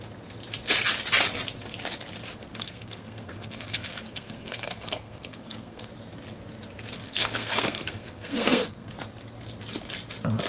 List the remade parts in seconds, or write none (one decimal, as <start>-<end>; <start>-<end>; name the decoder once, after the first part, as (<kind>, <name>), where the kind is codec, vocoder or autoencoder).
2.5-5.9 (codec, SNAC); 7.0-8.9